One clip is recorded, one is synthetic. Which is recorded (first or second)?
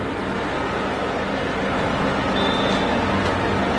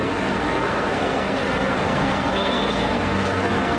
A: first